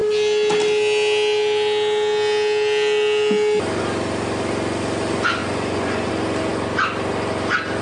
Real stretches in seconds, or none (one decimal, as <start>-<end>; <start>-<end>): 0.0-5.4; 6.1-7.8